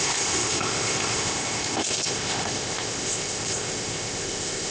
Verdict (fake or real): fake